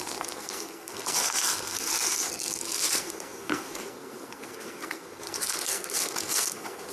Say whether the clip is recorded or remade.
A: remade